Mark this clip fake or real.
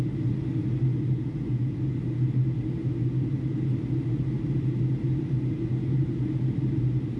real